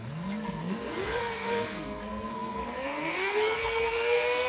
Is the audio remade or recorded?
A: remade